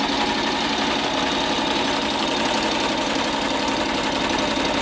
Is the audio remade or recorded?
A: recorded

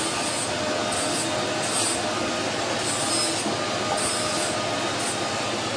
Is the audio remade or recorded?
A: recorded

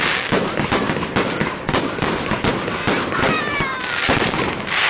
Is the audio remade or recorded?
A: recorded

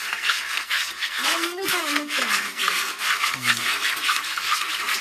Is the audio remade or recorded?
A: remade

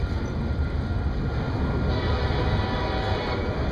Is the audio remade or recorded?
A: recorded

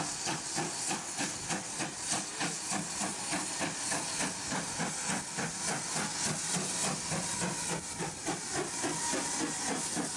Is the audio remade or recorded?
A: recorded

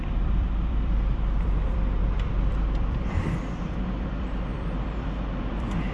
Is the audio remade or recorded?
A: remade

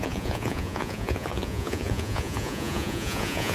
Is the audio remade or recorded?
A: remade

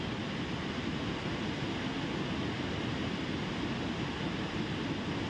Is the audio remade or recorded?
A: recorded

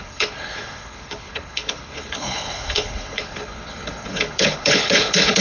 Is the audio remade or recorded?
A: remade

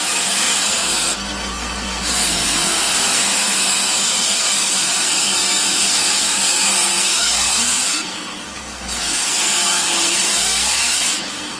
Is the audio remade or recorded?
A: remade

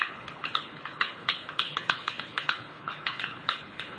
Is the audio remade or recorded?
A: remade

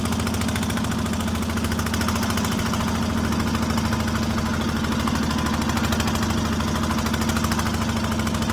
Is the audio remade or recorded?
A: recorded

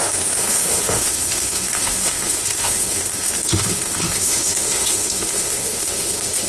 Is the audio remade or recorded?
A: remade